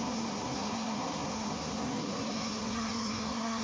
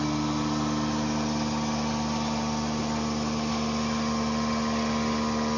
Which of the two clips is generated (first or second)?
first